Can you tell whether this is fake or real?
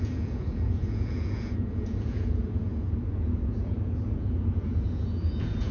fake